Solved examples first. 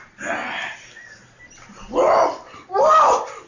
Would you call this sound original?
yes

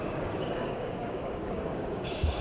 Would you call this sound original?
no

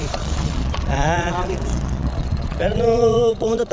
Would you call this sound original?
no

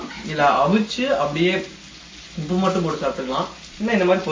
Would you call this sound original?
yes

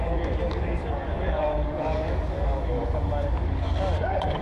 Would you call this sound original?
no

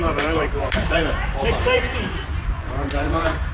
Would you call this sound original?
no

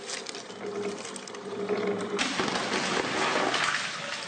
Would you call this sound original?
yes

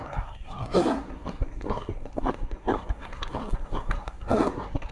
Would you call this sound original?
no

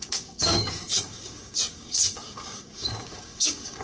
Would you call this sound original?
no